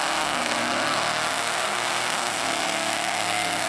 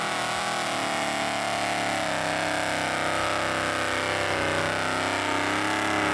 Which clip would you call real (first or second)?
second